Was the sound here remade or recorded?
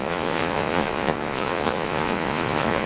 remade